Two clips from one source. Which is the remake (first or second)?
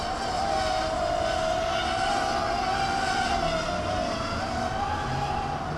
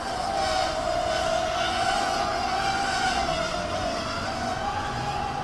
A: second